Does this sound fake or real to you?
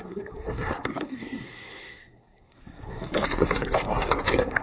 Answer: fake